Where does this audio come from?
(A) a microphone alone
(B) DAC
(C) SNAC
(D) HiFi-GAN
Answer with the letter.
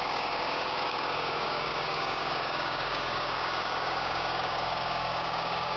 B